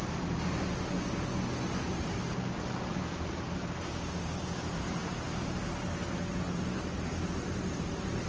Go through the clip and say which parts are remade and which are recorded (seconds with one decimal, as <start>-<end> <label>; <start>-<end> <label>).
0.0-8.3 recorded